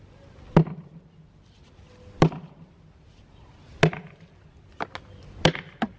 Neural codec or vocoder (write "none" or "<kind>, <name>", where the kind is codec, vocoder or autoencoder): none